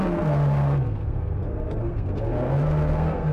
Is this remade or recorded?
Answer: remade